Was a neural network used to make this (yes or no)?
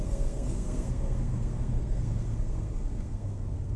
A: yes